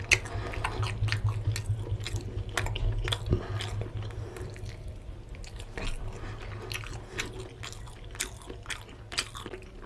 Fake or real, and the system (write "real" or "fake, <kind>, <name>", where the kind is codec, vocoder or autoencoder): real